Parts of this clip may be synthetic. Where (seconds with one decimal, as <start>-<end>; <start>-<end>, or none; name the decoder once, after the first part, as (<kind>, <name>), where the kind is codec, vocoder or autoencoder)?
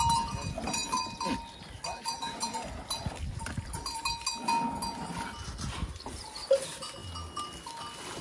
none